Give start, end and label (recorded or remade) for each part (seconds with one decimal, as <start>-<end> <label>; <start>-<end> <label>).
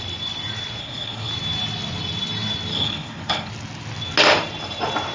0.0-0.8 recorded; 0.8-1.3 remade; 1.3-2.7 recorded; 2.7-3.5 remade; 3.5-5.1 recorded